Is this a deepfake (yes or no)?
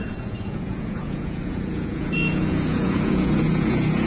yes